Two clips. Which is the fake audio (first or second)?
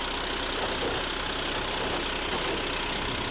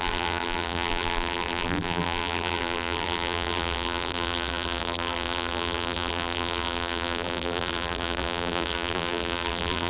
second